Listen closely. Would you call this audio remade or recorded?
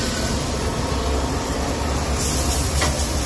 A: recorded